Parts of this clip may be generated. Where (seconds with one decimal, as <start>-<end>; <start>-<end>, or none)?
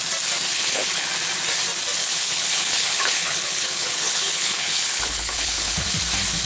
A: 0.5-1.1; 2.0-5.9